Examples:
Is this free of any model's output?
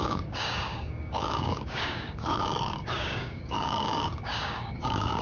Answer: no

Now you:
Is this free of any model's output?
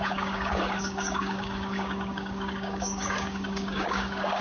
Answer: no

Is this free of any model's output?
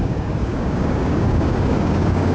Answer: no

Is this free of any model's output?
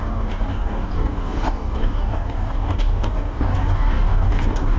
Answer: no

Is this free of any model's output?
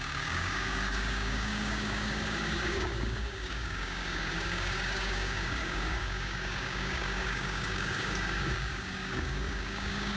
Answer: no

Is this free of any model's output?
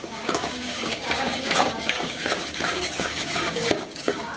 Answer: no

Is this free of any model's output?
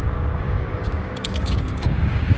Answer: no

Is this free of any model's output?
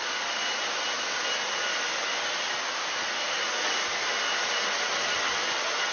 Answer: yes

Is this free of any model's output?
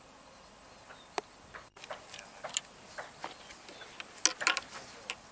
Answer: yes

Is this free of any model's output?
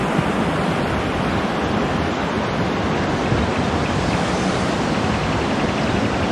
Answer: yes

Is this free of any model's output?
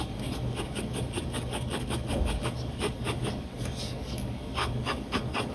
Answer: no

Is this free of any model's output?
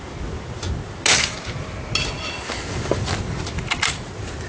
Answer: yes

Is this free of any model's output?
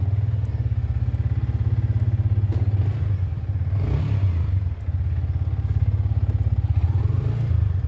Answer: yes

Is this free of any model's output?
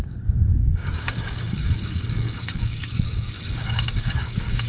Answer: no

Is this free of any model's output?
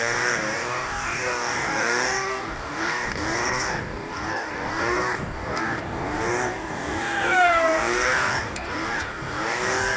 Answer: no